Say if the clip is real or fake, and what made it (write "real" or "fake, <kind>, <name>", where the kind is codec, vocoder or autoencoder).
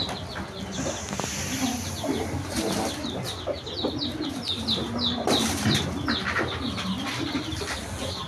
real